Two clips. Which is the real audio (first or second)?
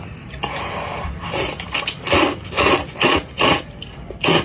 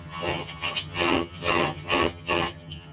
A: first